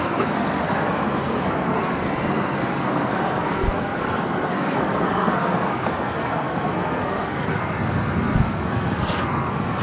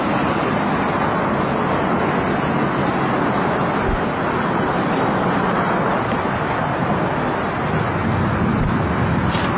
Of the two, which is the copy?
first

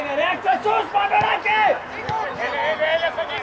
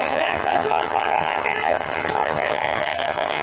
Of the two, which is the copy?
second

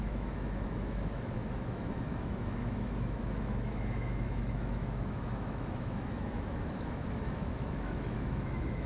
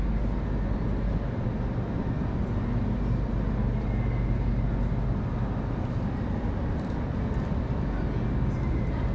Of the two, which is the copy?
first